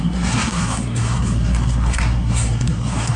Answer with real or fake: fake